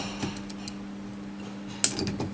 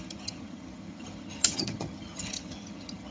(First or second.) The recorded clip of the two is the first